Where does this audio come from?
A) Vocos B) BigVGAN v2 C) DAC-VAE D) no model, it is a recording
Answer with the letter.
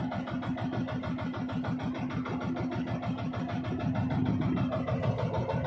D